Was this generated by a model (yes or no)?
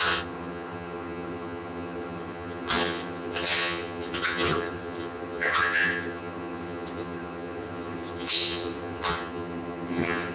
yes